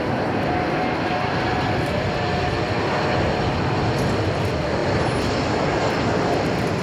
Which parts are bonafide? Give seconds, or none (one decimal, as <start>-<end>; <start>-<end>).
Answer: 0.0-6.8